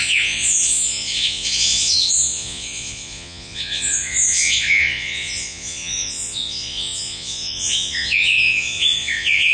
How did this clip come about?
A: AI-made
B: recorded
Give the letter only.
A